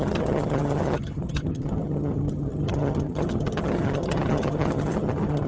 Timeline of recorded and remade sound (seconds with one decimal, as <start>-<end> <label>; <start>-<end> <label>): 0.0-5.5 remade

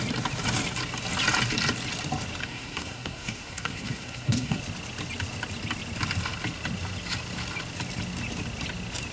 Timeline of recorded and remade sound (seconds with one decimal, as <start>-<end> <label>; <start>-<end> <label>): 0.0-2.4 recorded; 2.4-4.6 remade; 4.6-9.1 recorded

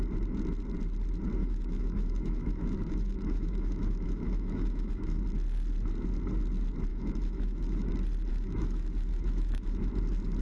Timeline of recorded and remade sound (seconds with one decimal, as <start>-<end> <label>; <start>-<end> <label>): 0.0-1.4 recorded; 1.4-5.2 remade; 5.2-6.9 recorded; 6.9-7.9 remade; 7.9-8.3 recorded; 8.3-9.9 remade; 9.9-10.4 recorded